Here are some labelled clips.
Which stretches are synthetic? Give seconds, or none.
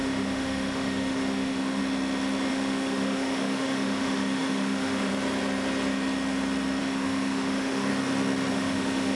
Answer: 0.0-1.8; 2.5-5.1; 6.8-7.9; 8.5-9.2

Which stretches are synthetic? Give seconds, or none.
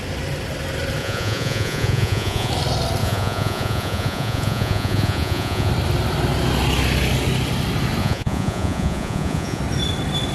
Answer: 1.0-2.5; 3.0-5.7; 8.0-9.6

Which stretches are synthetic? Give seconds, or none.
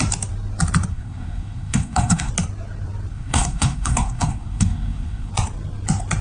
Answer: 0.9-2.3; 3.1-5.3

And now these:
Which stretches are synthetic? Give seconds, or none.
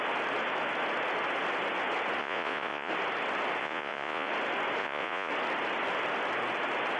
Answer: 2.2-2.9; 3.6-4.3; 4.8-5.3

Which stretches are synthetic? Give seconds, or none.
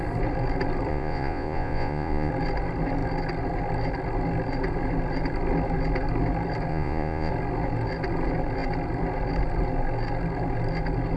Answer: 0.9-2.3; 6.7-7.3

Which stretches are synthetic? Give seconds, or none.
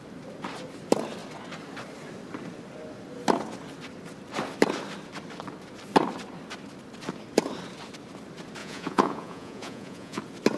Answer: 8.6-10.2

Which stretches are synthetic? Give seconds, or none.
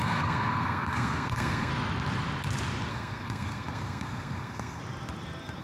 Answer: 0.0-1.7; 2.9-4.8